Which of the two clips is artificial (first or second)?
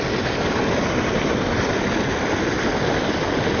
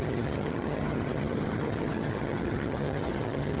second